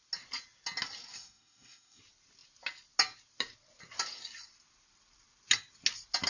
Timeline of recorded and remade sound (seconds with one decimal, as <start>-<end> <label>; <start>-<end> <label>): 0.0-1.1 recorded; 1.1-2.0 remade; 2.0-6.3 recorded